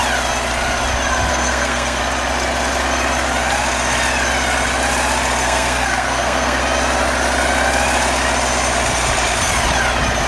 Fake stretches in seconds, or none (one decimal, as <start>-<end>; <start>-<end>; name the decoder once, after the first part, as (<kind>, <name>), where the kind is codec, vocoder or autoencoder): 1.3-2.0 (codec, SNAC); 5.4-6.6